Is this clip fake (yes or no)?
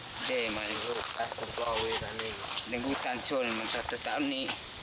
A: no